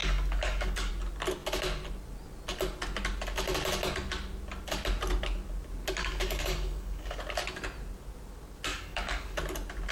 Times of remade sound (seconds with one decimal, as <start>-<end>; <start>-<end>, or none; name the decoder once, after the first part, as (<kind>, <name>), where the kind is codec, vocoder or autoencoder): 0.0-0.9 (codec, DAC); 6.0-7.2; 8.7-9.4